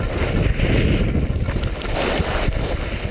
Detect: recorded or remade recorded